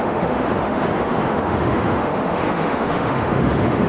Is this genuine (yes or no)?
no